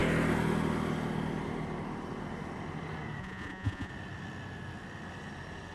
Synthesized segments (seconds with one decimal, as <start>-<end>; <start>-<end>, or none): 3.2-3.9